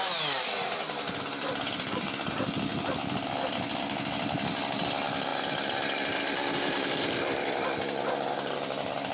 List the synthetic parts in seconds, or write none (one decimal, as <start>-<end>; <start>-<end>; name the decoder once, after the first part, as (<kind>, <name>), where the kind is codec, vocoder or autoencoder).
0.0-9.1 (vocoder, BigVGAN v2)